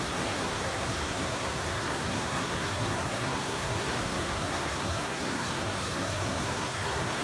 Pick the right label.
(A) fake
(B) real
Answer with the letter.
A